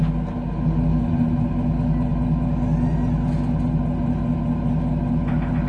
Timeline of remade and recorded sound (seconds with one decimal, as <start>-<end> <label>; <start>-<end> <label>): 0.0-5.7 recorded